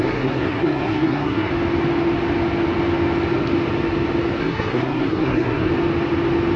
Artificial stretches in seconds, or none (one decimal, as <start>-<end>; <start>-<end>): 0.0-1.5; 4.4-5.7